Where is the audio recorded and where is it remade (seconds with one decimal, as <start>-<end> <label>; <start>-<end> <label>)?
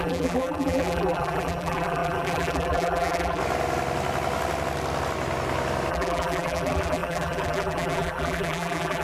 0.0-3.4 remade; 3.4-5.9 recorded; 5.9-9.0 remade